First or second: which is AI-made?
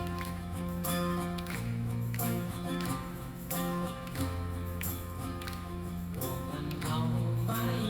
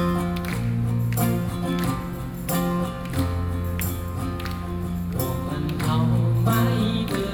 first